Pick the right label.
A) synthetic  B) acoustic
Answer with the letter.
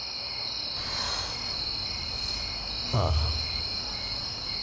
B